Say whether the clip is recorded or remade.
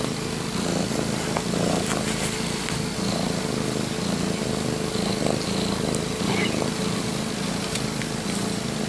recorded